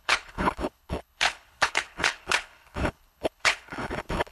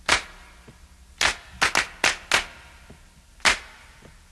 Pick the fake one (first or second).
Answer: first